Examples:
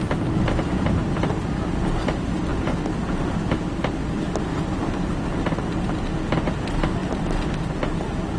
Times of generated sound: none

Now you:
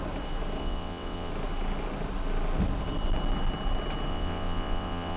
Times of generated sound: 0.6-1.3 (vocoder, WaveNeXt); 4.1-5.2

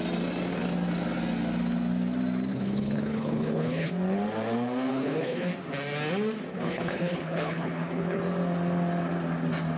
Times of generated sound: 2.5-3.9 (codec, HILCodec); 4.9-5.5; 6.5-8.2